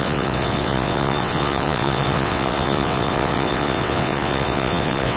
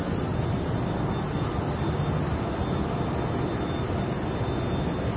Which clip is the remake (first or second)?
first